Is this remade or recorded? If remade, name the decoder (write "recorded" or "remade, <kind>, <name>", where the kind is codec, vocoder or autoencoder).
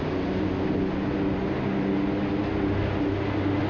recorded